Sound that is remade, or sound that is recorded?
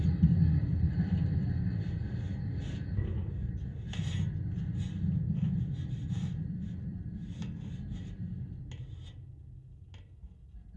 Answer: recorded